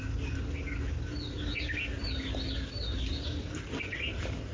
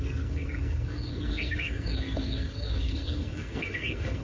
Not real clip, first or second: second